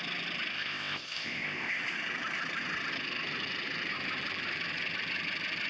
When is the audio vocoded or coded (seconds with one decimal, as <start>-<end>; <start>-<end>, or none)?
0.5-1.8